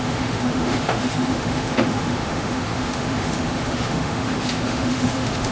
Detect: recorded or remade remade